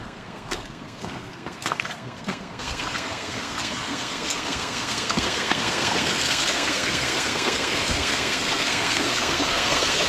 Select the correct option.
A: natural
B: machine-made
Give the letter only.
B